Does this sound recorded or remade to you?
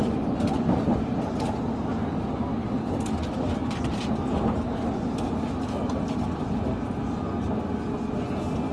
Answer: recorded